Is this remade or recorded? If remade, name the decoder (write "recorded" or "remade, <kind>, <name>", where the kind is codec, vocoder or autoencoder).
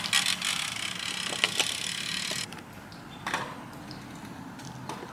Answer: recorded